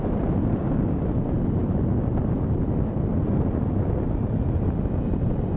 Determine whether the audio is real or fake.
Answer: real